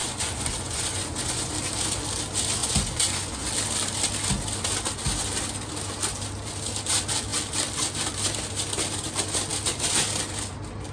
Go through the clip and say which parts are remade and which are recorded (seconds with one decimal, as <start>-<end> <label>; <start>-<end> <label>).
0.0-1.5 remade; 1.5-2.6 recorded; 2.6-3.4 remade; 3.4-10.9 recorded